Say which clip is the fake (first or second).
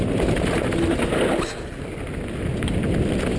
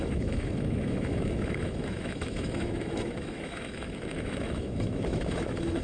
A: second